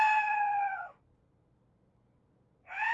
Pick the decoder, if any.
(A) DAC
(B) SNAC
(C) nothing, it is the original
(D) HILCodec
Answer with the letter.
C